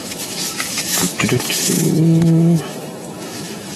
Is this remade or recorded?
remade